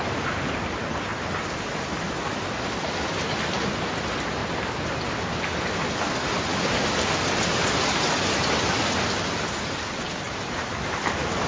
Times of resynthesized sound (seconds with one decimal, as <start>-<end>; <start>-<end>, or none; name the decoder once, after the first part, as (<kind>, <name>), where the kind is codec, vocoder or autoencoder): none